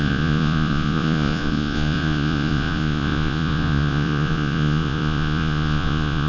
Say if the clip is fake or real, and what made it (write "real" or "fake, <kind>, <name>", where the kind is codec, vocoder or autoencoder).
fake, vocoder, Vocos